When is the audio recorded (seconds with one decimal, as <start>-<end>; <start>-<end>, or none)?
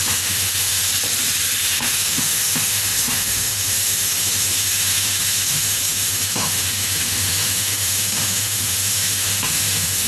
0.9-1.6